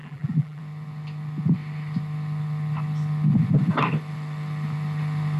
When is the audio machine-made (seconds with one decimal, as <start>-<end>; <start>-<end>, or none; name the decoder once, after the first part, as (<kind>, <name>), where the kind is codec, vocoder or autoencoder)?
0.0-0.6 (vocoder, BigVGAN v2)